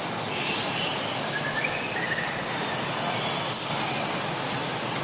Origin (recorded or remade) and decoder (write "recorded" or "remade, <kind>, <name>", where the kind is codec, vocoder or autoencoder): recorded